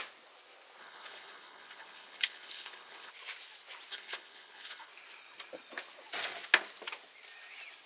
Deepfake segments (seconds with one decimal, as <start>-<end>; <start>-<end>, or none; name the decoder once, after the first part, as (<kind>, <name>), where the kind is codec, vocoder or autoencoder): 0.8-3.1 (codec, HILCodec); 3.9-4.9